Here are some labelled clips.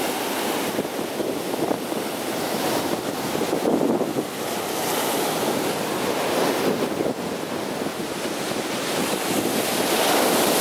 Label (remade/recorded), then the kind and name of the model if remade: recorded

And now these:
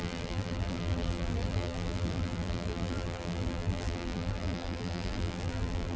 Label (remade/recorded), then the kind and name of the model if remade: remade, vocoder, BigVGAN v2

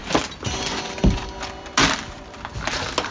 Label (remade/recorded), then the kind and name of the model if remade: recorded